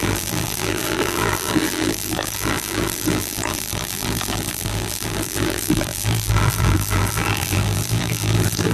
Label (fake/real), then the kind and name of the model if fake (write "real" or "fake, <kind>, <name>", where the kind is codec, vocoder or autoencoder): fake, vocoder, BigVGAN v2